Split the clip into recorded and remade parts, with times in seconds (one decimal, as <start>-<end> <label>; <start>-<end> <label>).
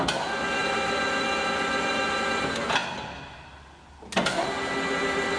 0.0-5.4 recorded